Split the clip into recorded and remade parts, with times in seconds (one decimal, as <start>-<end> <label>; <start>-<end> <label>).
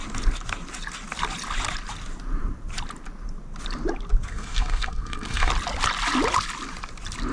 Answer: 0.0-4.3 recorded; 4.3-5.5 remade; 5.5-7.3 recorded